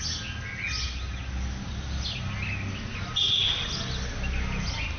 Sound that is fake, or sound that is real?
real